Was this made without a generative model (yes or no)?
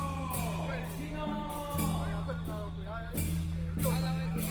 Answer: yes